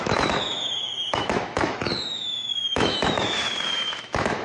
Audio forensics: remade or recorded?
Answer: remade